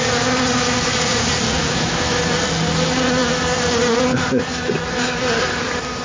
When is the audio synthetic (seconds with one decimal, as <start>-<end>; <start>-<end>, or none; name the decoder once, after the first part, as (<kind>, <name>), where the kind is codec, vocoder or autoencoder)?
1.6-2.2 (autoencoder, DAC-VAE)